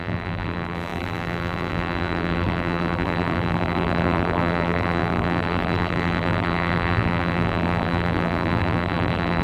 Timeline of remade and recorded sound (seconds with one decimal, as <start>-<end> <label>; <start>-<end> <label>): 0.0-9.4 remade

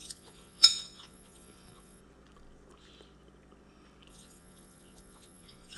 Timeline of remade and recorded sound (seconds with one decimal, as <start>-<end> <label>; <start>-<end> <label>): 0.0-2.0 remade; 2.0-4.1 recorded; 4.1-5.8 remade